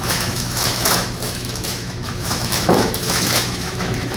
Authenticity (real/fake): fake